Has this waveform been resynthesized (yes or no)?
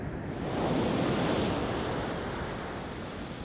no